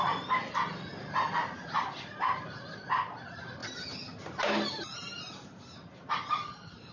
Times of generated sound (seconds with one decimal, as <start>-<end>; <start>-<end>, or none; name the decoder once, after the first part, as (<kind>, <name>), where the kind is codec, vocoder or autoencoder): none

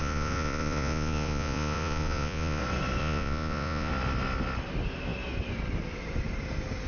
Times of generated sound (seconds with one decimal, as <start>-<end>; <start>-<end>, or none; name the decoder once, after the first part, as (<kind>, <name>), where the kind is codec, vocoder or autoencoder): 0.0-2.6 (vocoder, Vocos); 3.0-3.9

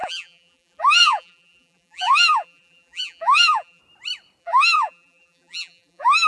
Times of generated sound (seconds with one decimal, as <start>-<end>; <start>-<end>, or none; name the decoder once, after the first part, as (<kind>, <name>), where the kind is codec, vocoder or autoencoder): 0.0-3.8 (vocoder, BigVGAN v2); 4.4-6.3

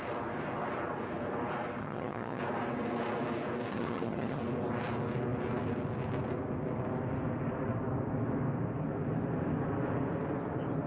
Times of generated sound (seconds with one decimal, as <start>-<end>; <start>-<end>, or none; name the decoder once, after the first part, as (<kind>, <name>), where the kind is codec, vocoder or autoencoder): 1.8-2.4 (vocoder, HiFi-GAN); 3.7-4.4

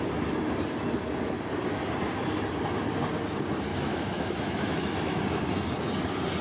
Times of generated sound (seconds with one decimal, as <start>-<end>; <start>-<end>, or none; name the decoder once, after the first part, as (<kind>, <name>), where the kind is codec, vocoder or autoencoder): 3.7-5.2 (autoencoder, DAC-VAE)

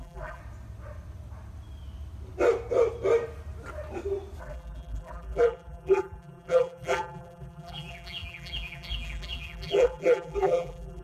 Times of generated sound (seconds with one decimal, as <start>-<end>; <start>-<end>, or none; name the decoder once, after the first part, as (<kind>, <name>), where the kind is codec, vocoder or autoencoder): 0.0-0.4 (vocoder, BigVGAN v2); 4.4-11.0

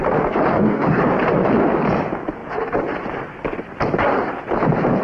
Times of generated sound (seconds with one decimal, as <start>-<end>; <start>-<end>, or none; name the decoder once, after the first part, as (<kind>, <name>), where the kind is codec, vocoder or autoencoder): 0.5-1.0 (codec, DAC)